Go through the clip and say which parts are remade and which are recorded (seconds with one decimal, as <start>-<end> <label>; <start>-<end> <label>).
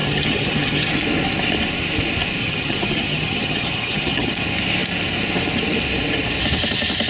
0.0-0.9 remade; 0.9-2.4 recorded; 2.4-4.3 remade; 4.3-7.1 recorded